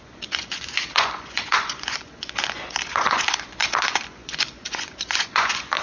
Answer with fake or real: fake